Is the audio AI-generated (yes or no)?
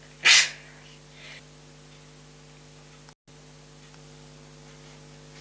no